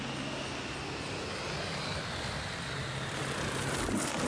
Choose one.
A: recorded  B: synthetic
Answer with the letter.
A